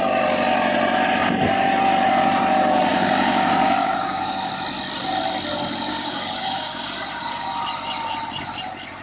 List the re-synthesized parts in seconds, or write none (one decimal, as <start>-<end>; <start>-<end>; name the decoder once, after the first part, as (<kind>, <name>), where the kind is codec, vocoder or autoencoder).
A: 2.9-4.5 (codec, DAC); 5.9-6.8